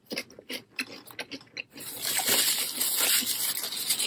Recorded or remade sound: recorded